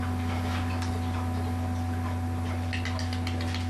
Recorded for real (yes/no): yes